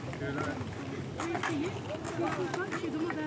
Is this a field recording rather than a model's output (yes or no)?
yes